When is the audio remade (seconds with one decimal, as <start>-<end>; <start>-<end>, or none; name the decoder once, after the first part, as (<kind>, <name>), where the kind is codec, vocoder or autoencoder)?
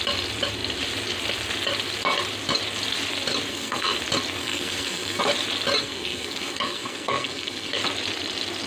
3.5-4.0 (codec, SNAC); 4.4-5.2; 5.8-7.8